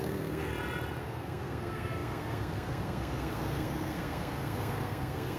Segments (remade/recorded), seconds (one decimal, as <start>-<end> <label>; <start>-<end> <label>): 0.0-0.5 remade; 0.5-1.0 recorded; 1.0-5.4 remade